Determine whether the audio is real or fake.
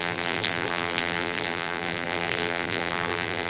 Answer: fake